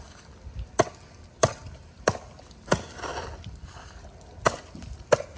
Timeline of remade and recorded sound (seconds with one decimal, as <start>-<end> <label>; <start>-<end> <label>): 0.0-5.4 recorded